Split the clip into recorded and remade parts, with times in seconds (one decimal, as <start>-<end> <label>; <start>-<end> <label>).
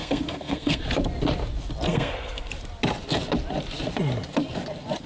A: 0.0-0.8 remade; 0.8-1.9 recorded; 1.9-2.5 remade; 2.5-5.1 recorded